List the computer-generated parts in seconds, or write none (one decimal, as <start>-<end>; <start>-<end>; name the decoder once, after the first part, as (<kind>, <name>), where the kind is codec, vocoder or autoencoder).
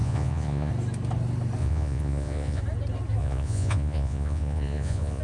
0.0-0.7 (vocoder, Vocos); 1.6-2.6; 3.2-5.2